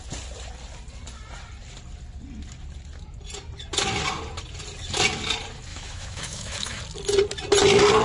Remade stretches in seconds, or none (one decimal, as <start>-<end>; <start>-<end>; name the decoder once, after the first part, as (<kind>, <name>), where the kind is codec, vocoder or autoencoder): 5.7-6.8 (autoencoder, DAC-VAE)